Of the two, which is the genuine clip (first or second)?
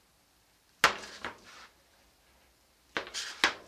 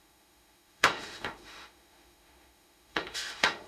first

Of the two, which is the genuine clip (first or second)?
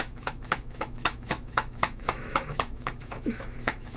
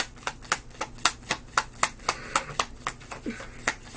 second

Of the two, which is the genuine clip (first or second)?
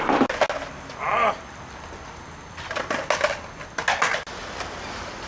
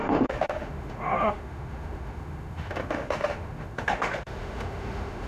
first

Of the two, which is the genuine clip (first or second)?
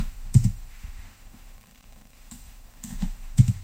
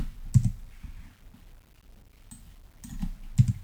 second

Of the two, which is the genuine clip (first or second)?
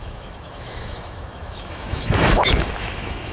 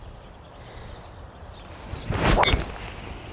second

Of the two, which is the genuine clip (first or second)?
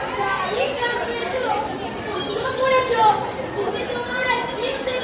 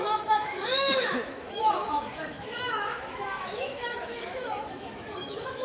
first